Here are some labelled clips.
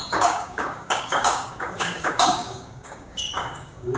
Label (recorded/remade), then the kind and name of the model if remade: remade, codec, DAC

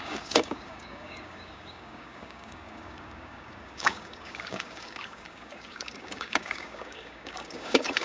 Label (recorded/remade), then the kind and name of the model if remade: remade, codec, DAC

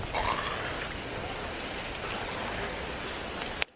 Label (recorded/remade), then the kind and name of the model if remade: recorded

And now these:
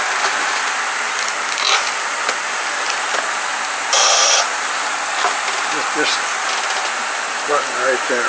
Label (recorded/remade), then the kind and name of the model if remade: recorded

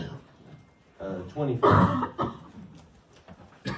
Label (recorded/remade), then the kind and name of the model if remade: recorded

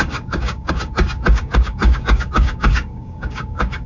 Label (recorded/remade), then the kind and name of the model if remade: remade, codec, DAC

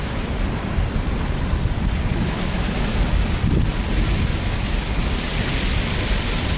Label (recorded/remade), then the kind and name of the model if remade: recorded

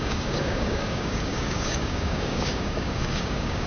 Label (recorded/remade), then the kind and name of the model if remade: remade, codec, DAC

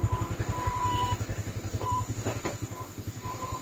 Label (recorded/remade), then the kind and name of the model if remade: remade, codec, DAC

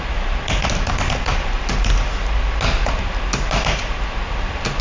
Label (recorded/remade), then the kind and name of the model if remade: recorded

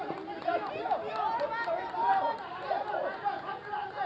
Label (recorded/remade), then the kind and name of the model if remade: recorded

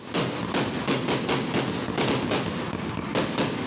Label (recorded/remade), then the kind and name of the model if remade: recorded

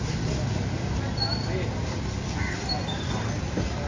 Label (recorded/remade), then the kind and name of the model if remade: recorded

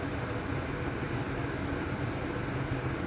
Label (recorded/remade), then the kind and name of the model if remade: recorded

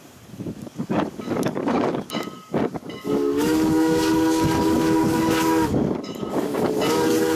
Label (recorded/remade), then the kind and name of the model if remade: remade, codec, DAC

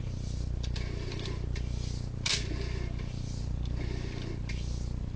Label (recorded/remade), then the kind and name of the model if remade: recorded